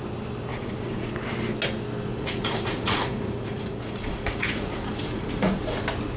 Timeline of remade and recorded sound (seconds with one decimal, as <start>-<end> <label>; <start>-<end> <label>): 0.0-0.5 recorded; 0.5-1.1 remade; 1.1-2.1 recorded; 2.1-5.8 remade; 5.8-6.2 recorded